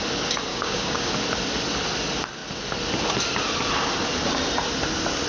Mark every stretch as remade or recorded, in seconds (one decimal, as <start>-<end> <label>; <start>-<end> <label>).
0.0-0.5 recorded; 0.5-1.1 remade; 1.1-5.3 recorded